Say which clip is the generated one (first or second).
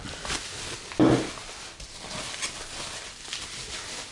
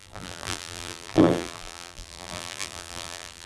second